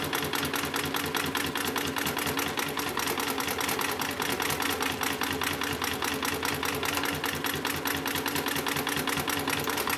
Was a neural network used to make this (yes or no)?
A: no